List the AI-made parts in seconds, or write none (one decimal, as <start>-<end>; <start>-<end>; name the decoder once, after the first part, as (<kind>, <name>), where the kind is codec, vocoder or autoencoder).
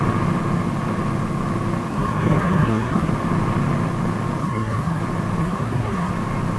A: 1.9-3.1 (codec, SNAC); 4.4-5.0; 5.4-6.1